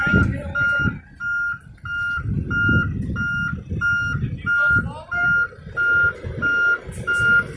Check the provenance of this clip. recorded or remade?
recorded